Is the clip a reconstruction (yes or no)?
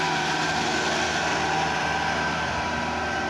no